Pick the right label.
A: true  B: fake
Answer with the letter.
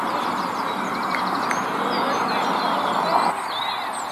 A